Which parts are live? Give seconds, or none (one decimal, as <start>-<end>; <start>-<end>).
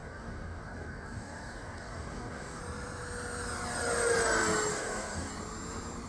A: 2.6-4.7; 5.3-6.1